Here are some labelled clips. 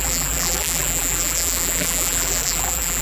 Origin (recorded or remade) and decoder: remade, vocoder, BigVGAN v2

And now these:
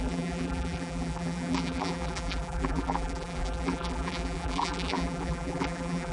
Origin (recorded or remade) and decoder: remade, vocoder, BigVGAN v2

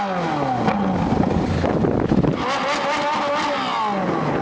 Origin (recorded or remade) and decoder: recorded